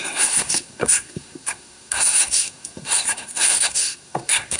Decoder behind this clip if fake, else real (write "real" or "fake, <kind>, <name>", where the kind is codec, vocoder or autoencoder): fake, codec, SNAC